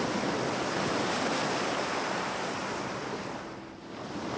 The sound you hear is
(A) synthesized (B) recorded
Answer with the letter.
B